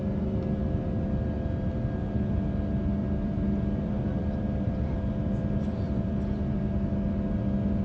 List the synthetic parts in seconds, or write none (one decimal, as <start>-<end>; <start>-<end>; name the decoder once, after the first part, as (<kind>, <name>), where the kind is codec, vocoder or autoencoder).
3.0-6.6 (vocoder, BigVGAN v2)